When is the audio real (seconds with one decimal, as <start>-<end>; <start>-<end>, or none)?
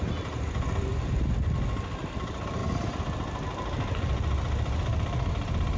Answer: 0.9-2.0; 2.6-5.3